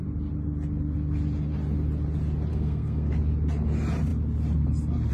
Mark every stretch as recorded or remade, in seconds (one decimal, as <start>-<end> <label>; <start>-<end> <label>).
0.0-2.5 recorded; 2.5-3.1 remade; 3.1-5.1 recorded